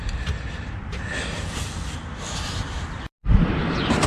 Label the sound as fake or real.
real